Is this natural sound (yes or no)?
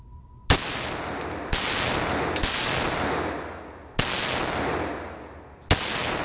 yes